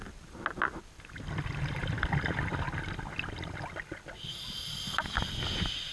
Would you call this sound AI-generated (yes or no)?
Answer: no